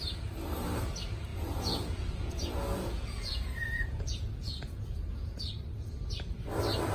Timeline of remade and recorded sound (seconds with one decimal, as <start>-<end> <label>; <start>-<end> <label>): 0.0-1.3 recorded; 1.3-5.4 remade; 5.4-6.9 recorded